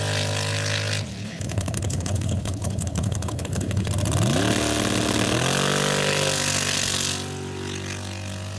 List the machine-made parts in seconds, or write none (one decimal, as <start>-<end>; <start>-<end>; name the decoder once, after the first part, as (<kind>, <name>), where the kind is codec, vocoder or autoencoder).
1.2-3.9 (codec, HILCodec)